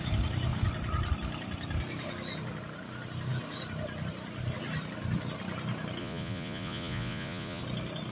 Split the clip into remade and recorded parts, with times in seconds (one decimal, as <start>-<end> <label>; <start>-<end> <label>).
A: 0.0-6.0 recorded; 6.0-7.6 remade; 7.6-8.1 recorded